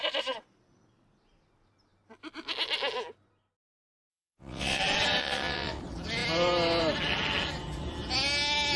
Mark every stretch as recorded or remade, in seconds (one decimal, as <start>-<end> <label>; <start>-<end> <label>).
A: 0.0-4.1 recorded; 4.1-4.8 remade; 4.8-5.2 recorded; 5.2-5.8 remade; 5.8-8.8 recorded